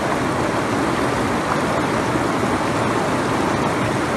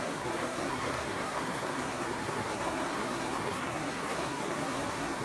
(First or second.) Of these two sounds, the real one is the first